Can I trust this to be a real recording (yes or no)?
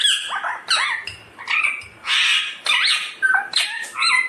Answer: yes